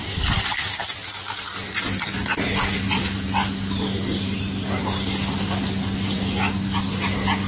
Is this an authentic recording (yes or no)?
yes